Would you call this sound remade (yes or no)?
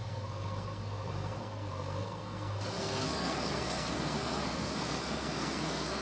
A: yes